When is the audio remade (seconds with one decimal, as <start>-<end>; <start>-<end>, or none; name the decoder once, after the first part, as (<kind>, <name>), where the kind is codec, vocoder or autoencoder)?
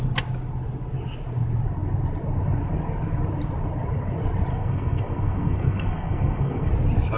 4.5-6.7 (codec, SNAC)